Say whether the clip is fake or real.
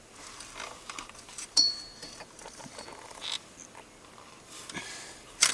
fake